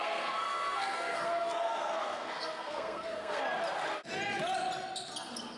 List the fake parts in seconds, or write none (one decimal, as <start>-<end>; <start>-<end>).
0.0-3.4

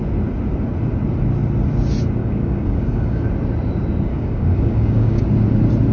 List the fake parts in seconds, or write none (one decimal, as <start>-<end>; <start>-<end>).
2.2-3.2; 4.1-5.2

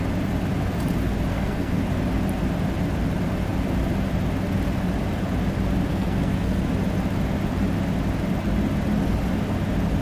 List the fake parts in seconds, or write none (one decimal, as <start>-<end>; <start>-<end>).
1.3-1.8; 5.9-6.7

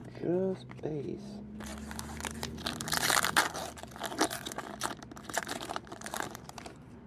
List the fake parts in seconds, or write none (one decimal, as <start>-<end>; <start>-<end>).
5.4-7.1

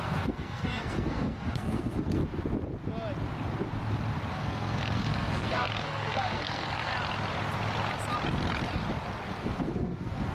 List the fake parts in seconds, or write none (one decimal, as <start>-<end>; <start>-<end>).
0.0-2.2; 4.3-6.9; 9.4-10.3

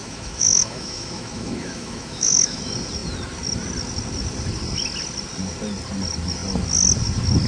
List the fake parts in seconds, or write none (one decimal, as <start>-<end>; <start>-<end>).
0.0-2.6

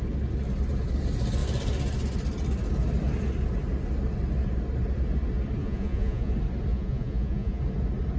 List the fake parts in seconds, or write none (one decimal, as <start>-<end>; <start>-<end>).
5.6-6.3; 6.7-7.6

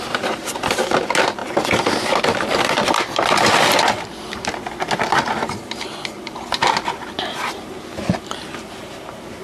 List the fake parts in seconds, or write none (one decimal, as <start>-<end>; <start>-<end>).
1.4-5.8; 6.6-7.8